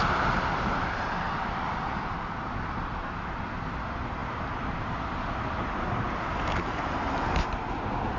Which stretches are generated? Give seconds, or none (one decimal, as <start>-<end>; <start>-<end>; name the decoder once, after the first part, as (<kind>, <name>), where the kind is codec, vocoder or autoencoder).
none